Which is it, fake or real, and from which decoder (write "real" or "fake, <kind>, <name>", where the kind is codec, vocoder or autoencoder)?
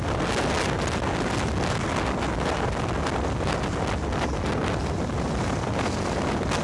real